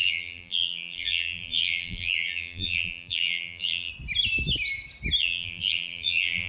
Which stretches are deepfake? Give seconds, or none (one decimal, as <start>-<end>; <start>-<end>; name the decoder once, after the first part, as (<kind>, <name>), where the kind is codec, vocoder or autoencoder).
0.0-3.9 (vocoder, BigVGAN v2); 5.2-6.5